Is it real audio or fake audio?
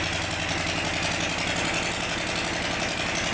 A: real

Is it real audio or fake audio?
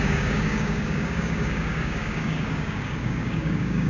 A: fake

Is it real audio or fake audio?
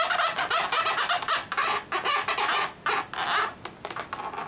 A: real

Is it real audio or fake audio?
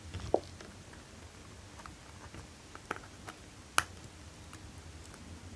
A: real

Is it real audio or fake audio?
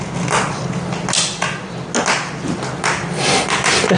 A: real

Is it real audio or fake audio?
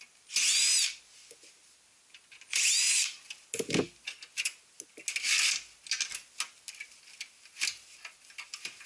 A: real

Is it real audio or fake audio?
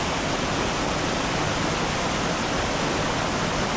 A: real